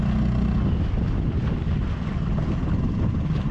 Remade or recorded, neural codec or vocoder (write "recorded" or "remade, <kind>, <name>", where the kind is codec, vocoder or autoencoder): recorded